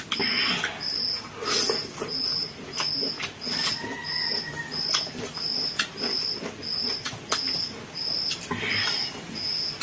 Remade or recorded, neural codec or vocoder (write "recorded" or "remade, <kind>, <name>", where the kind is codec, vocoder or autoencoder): recorded